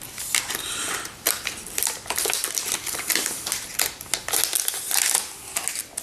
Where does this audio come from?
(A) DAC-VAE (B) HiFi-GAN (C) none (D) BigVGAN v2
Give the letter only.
C